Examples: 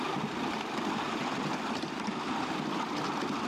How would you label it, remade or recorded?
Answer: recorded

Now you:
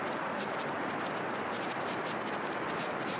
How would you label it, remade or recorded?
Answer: remade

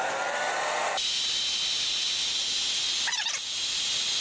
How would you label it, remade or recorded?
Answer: recorded